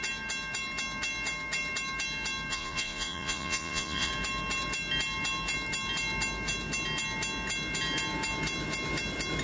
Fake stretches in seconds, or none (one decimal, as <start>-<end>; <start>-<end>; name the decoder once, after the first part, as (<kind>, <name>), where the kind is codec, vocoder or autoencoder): 2.5-4.1 (vocoder, Vocos)